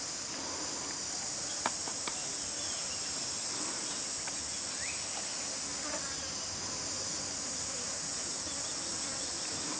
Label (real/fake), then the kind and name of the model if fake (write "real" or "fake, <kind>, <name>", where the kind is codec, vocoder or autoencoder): real